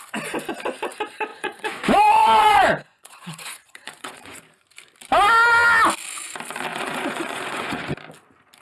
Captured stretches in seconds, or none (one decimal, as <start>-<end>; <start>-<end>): 0.0-1.3; 4.4-6.7; 7.9-8.6